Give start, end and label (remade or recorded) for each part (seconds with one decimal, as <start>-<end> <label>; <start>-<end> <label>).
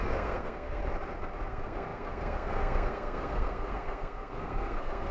0.0-0.8 remade; 0.8-1.4 recorded; 1.4-5.1 remade